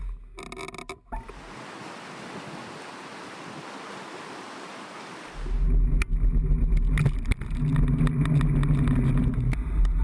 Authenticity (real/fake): real